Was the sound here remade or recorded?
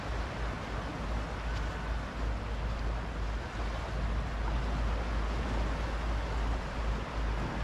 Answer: recorded